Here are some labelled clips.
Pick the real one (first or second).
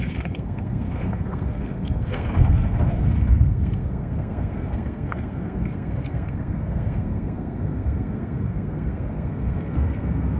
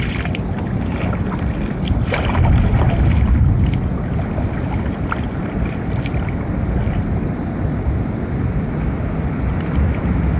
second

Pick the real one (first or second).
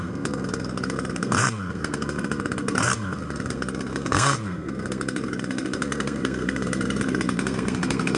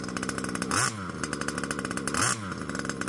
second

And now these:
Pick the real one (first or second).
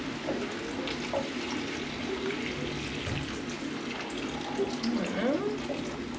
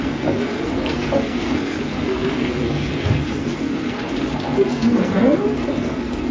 first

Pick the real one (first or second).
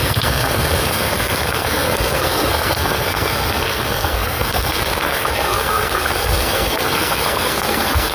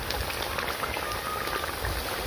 second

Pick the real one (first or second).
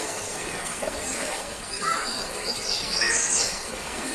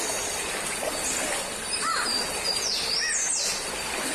second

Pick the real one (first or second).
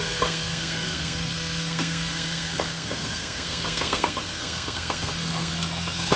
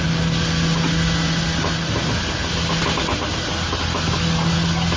second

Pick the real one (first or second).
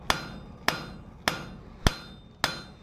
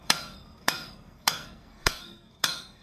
first